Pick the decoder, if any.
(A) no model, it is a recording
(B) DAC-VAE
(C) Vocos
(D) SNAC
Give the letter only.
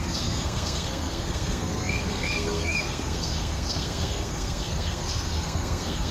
D